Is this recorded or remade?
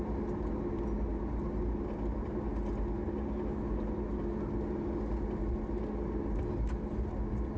recorded